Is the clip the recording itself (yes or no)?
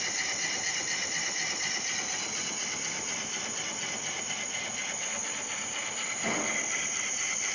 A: yes